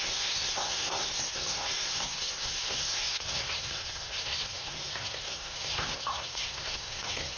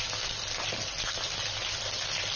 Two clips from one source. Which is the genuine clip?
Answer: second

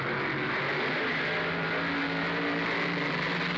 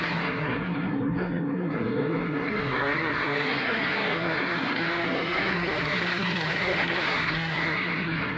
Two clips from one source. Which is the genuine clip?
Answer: first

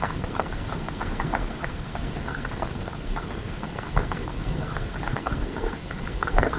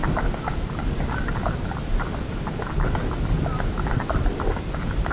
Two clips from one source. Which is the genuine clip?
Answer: second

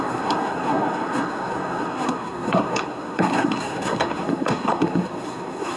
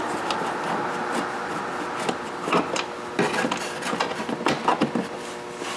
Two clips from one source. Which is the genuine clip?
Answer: second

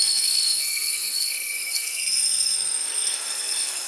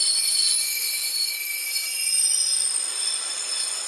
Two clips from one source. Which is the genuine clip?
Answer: second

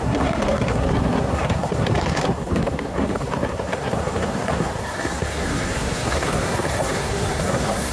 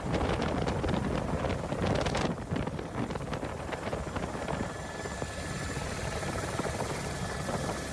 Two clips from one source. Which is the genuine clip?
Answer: second